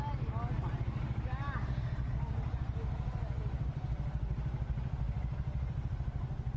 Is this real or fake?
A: real